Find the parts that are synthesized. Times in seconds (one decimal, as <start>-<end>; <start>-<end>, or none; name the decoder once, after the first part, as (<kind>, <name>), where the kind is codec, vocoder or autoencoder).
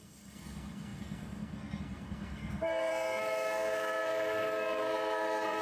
0.0-5.6 (codec, SNAC)